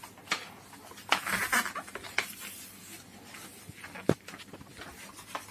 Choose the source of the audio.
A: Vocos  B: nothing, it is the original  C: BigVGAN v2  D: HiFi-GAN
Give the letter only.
B